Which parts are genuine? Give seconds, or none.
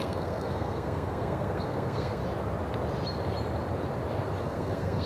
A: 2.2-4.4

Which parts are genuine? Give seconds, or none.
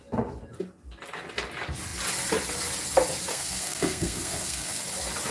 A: 0.0-3.3; 4.8-5.3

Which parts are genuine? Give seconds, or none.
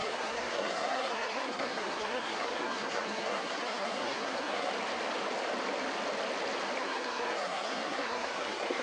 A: 4.7-6.8